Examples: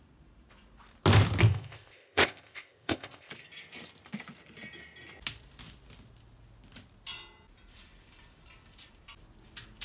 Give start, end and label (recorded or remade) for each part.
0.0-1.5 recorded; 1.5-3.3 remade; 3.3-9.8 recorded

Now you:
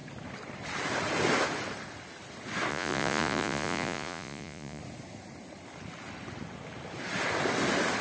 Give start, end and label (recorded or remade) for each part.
0.0-2.7 recorded; 2.7-4.8 remade; 4.8-8.0 recorded

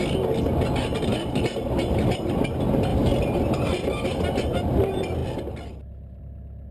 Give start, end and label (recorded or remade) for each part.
0.0-1.1 recorded; 1.1-2.4 remade; 2.4-2.9 recorded; 2.9-3.4 remade; 3.4-6.7 recorded

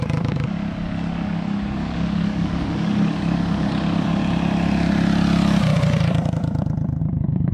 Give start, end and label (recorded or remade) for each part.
0.0-4.2 remade; 4.2-7.0 recorded; 7.0-7.5 remade

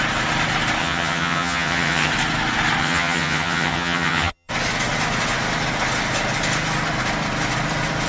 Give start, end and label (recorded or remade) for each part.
0.0-0.8 recorded; 0.8-2.1 remade; 2.1-2.8 recorded; 2.8-4.5 remade; 4.5-8.1 recorded

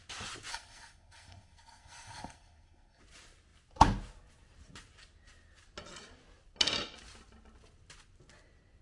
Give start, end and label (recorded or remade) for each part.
0.0-0.5 recorded; 0.5-3.0 remade; 3.0-8.8 recorded